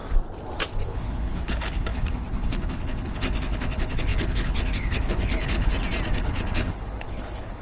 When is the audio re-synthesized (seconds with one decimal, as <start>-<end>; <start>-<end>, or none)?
0.9-5.7; 6.2-7.6